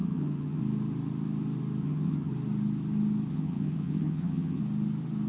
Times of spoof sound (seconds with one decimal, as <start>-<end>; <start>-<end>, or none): 0.0-0.6; 1.8-2.3; 3.3-4.6